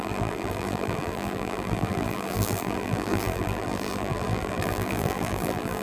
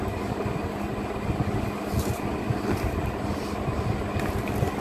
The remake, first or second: first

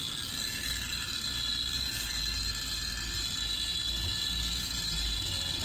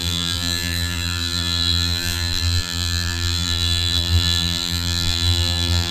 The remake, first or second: second